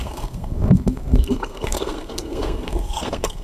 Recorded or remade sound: remade